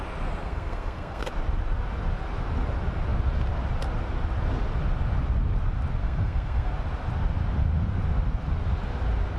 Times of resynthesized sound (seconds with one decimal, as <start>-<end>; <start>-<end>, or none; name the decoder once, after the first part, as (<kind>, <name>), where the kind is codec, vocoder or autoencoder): 0.4-1.3 (codec, SNAC); 6.0-6.7